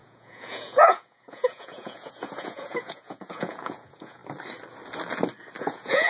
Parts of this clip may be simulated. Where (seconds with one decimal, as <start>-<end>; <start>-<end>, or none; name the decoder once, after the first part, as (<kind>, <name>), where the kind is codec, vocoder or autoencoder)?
0.0-4.2 (vocoder, Vocos); 5.6-6.1